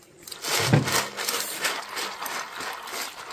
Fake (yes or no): no